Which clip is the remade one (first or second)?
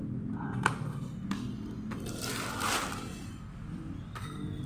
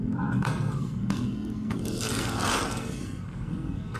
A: second